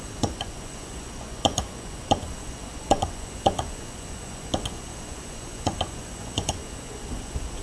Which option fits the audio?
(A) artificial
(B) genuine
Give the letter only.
A